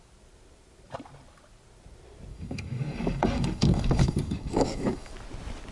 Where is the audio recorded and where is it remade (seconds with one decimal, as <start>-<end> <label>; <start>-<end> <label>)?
0.0-2.3 recorded; 2.3-5.1 remade; 5.1-5.7 recorded